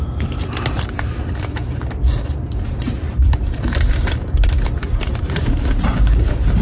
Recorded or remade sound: remade